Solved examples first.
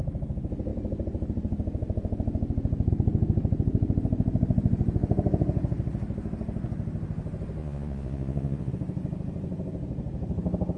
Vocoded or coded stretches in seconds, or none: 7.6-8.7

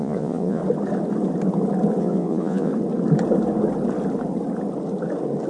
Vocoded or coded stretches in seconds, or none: 0.0-0.6; 2.0-2.7

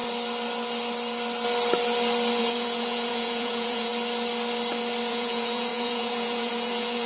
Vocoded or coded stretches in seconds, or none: 2.4-3.9; 5.1-7.1

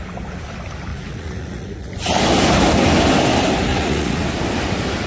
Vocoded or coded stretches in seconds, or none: 0.9-1.9; 3.7-4.2